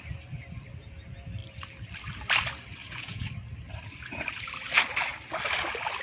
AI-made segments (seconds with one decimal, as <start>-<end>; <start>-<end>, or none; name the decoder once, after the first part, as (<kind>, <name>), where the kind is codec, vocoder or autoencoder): 2.8-3.3 (vocoder, Vocos)